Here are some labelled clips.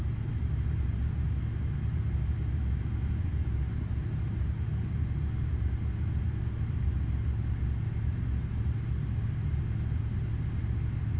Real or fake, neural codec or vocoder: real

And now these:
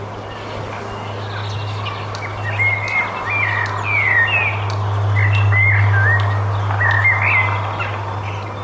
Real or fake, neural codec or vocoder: real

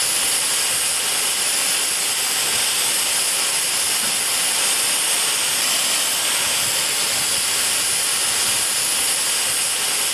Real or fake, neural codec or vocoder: real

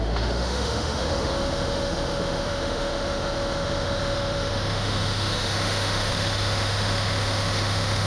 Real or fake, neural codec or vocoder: fake, autoencoder, DAC-VAE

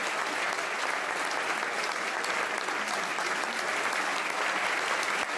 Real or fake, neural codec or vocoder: real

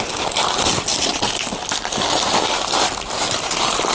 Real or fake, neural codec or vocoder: real